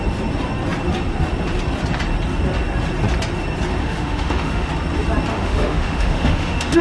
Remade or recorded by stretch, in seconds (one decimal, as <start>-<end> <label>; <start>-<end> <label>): 0.0-3.8 recorded; 3.8-4.7 remade; 4.7-5.3 recorded; 5.3-6.8 remade